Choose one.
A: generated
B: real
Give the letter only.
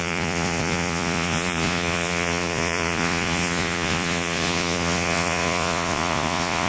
A